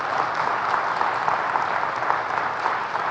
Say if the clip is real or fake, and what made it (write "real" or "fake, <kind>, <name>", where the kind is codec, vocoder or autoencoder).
real